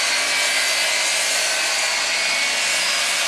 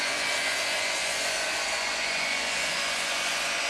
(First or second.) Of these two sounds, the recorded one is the first